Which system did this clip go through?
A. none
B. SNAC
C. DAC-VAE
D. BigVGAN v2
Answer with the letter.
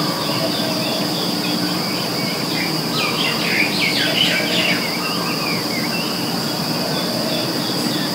A